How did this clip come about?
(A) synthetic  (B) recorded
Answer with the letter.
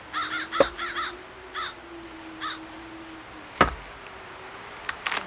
B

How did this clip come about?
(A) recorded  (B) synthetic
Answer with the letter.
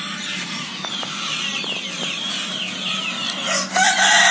A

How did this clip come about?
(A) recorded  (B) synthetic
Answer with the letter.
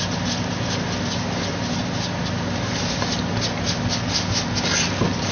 A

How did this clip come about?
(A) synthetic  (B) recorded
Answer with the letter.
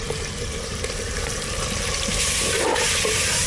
A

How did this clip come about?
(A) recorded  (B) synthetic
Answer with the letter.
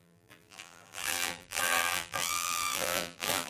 B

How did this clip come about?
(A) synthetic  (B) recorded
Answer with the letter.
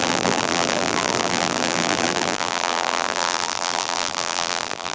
A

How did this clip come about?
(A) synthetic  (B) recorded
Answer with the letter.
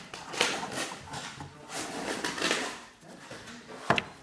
B